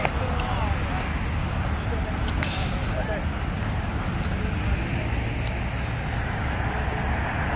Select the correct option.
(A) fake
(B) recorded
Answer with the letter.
B